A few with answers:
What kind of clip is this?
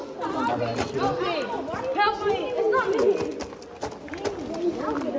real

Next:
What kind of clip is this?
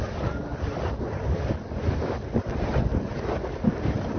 real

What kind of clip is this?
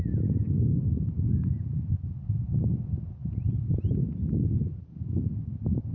real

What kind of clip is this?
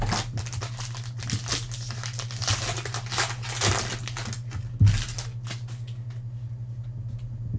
real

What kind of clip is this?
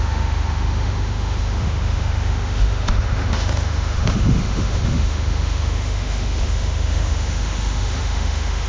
fake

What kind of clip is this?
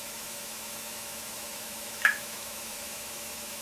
fake